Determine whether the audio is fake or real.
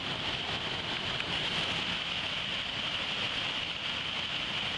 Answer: real